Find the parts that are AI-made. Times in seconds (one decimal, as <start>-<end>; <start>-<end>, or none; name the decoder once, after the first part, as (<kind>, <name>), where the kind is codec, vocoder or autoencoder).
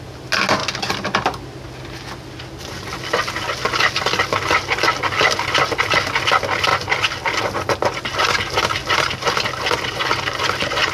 none